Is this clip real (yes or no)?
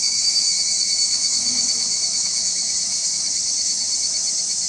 no